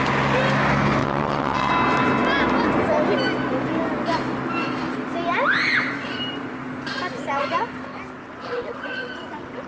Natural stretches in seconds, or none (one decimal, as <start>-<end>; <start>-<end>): 0.0-1.0; 1.7-8.2